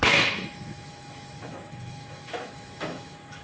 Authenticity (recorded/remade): remade